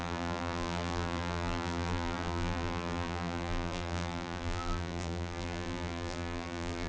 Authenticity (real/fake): fake